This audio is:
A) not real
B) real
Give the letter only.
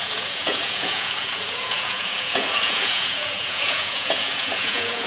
A